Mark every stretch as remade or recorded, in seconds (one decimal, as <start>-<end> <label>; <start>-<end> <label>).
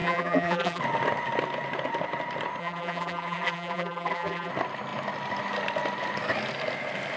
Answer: 0.0-0.8 remade; 0.8-2.6 recorded; 2.6-4.5 remade; 4.5-7.2 recorded